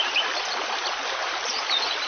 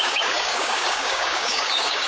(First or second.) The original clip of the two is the first